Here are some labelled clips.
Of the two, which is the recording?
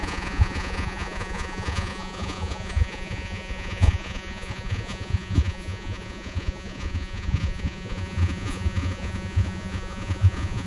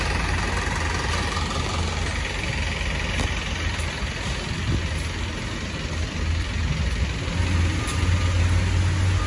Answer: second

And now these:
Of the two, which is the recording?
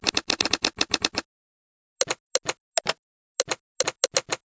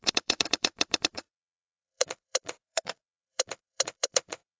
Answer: first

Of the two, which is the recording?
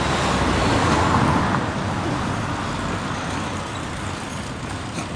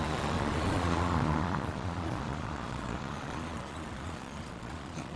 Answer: first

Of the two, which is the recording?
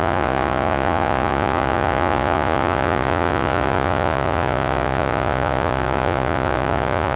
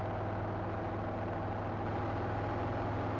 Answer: second